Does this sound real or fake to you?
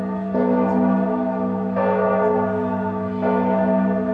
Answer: real